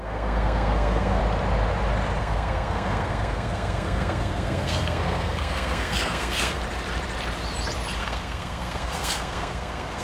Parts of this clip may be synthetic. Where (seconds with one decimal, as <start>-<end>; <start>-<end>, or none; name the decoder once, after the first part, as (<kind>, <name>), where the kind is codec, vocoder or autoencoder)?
0.0-1.2 (codec, SNAC); 2.2-6.6; 8.0-10.0